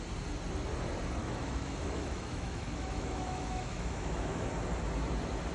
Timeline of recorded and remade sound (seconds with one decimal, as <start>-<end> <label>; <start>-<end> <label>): 0.0-1.2 recorded; 1.2-4.5 remade; 4.5-5.5 recorded